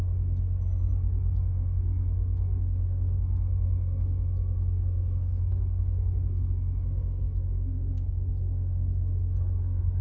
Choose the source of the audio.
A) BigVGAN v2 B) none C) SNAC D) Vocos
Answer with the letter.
C